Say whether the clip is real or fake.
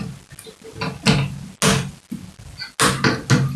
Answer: real